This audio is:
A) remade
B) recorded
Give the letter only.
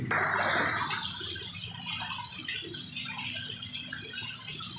B